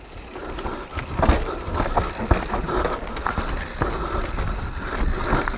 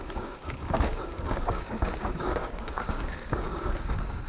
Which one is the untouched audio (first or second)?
first